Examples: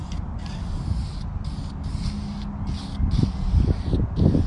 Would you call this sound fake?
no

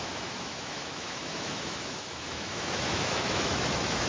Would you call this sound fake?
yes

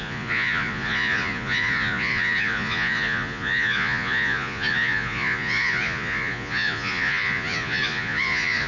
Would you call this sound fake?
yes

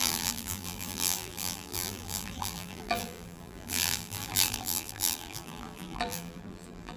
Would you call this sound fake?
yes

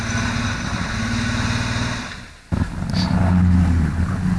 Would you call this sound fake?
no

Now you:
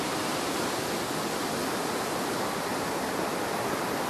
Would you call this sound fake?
no